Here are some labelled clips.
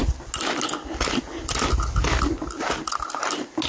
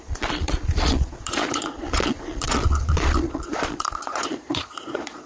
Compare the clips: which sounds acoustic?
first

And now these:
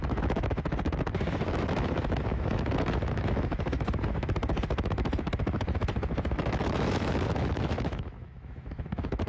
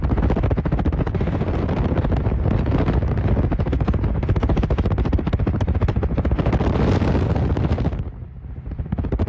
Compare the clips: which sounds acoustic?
second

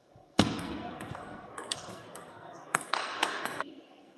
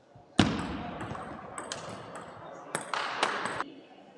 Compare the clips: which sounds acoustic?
second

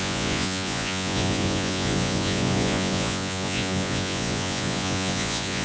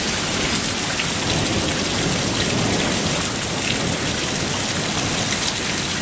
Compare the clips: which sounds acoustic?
second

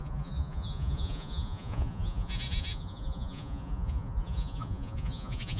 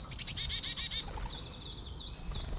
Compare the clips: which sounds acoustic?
second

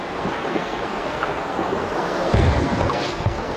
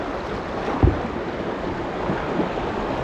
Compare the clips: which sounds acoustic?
second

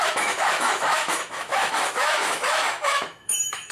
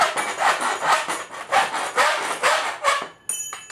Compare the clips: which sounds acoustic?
second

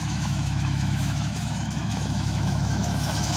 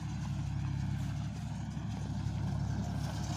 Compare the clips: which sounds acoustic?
second